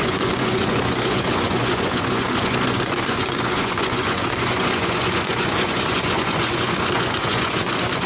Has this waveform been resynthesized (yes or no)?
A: yes